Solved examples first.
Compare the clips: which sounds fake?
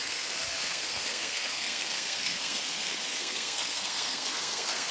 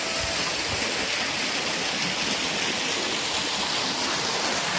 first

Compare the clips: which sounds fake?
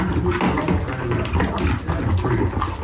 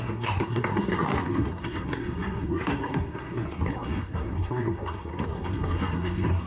second